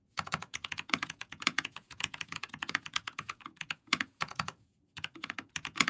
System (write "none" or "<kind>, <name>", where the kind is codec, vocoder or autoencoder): vocoder, Vocos